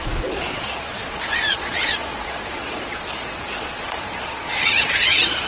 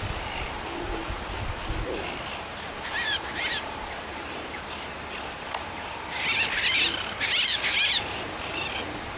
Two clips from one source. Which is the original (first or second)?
second